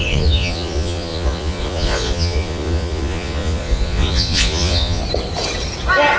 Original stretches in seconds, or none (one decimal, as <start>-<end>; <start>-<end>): 5.0-6.2